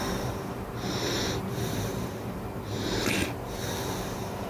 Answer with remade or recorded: remade